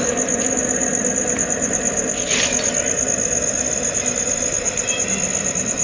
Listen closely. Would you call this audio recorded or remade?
recorded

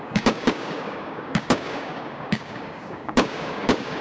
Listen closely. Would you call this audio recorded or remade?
remade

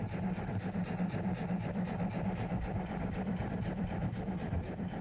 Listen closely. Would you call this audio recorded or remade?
recorded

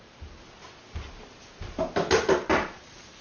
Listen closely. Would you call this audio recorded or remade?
recorded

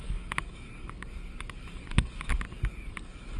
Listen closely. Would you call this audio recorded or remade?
remade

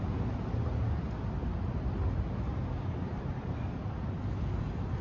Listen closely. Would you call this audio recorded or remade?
recorded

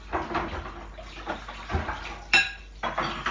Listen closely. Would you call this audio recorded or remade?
recorded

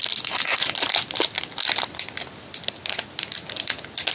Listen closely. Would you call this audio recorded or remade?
recorded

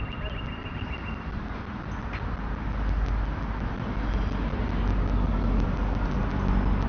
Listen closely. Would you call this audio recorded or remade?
recorded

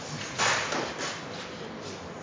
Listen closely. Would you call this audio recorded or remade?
recorded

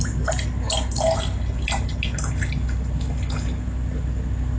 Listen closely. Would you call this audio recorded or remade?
recorded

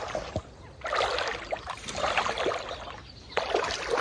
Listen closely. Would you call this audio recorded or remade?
recorded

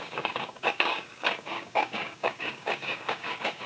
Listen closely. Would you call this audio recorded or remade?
remade